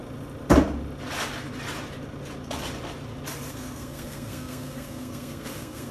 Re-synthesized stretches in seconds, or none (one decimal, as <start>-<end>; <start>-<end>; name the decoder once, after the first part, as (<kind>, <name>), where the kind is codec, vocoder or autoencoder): 3.5-5.9 (codec, SNAC)